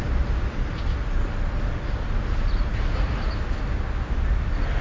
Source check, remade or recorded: recorded